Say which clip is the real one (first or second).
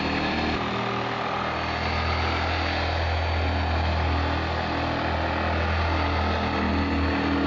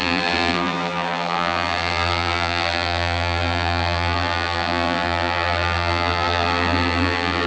first